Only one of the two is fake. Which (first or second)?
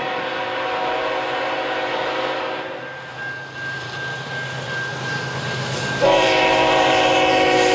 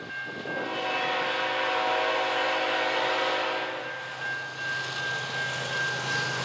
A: first